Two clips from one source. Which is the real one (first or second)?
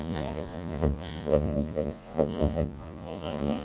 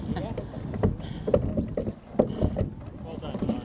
second